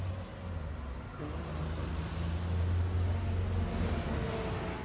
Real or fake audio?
real